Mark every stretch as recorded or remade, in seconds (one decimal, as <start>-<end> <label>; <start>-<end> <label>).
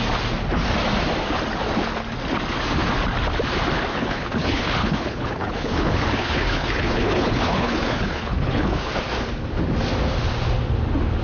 0.0-3.9 recorded; 3.9-8.9 remade; 8.9-11.2 recorded